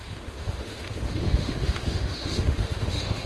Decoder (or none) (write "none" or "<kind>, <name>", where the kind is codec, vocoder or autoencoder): autoencoder, DAC-VAE